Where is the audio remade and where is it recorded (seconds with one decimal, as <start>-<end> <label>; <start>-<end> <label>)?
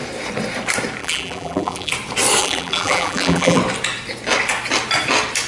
0.0-1.0 recorded; 1.0-1.9 remade; 1.9-2.4 recorded; 2.4-3.6 remade; 3.6-5.5 recorded